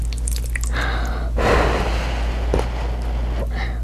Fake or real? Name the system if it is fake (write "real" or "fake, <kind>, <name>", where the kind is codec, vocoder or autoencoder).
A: real